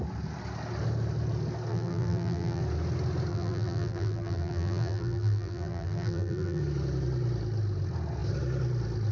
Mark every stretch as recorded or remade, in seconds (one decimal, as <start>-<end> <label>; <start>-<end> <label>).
0.0-1.7 recorded; 1.7-2.6 remade; 2.6-3.3 recorded; 3.3-6.6 remade; 6.6-9.1 recorded